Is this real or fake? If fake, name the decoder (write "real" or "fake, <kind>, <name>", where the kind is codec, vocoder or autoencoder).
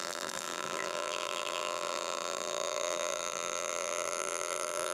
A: fake, vocoder, BigVGAN v2